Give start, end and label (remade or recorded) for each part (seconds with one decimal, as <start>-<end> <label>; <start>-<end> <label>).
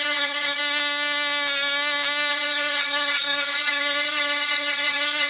0.0-0.6 remade; 0.6-2.3 recorded; 2.3-5.3 remade